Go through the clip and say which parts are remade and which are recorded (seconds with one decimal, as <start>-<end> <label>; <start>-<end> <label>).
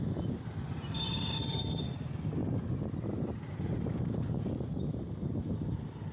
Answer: 0.0-6.1 recorded